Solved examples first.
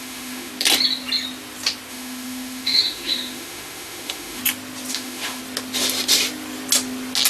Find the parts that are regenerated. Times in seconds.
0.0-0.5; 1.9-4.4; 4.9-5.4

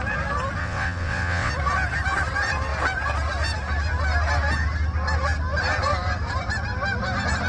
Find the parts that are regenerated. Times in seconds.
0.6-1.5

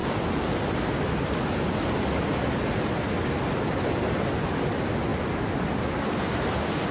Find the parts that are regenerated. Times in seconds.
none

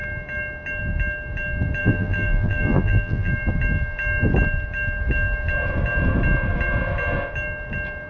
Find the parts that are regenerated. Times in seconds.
1.8-3.3